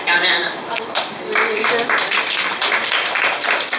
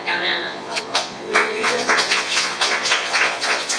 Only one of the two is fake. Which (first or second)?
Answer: second